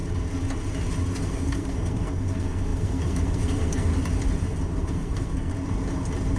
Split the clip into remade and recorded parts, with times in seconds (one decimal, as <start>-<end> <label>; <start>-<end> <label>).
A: 0.0-1.1 recorded; 1.1-3.9 remade; 3.9-4.8 recorded; 4.8-5.5 remade; 5.5-6.4 recorded